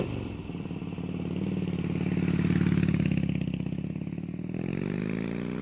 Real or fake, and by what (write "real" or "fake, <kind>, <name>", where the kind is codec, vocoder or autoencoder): real